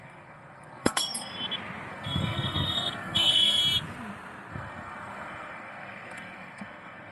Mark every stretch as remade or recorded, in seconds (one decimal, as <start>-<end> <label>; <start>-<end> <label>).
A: 0.0-1.3 remade; 1.3-1.9 recorded; 1.9-3.6 remade; 3.6-4.5 recorded; 4.5-7.1 remade